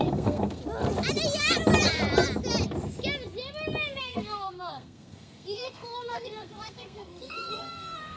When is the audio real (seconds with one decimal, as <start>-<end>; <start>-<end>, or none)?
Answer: 0.6-4.0